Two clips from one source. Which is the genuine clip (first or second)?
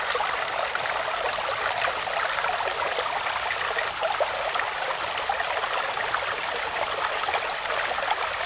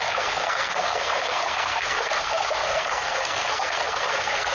first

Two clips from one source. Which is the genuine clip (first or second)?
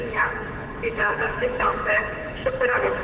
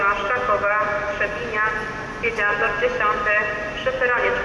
second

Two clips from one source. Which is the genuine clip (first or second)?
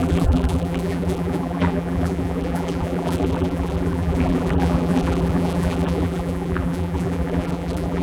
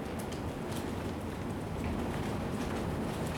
second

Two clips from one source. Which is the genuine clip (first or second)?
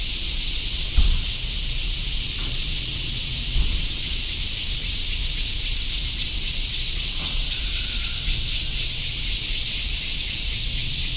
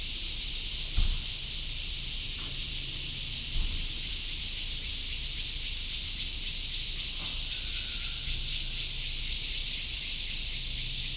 second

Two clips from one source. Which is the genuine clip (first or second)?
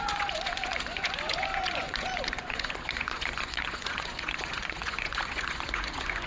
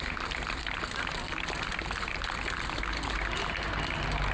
second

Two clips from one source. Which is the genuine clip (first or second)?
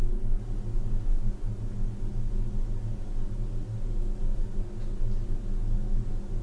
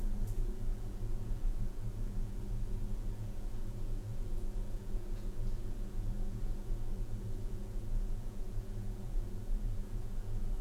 first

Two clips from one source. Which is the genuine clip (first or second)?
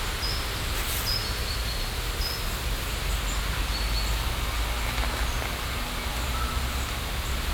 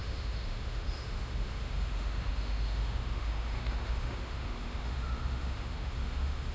first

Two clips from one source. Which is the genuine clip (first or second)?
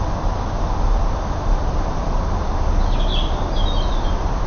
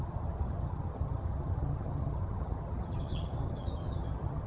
first